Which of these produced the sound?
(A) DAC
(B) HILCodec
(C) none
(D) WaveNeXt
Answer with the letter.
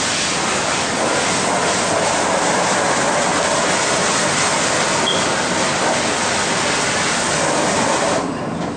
C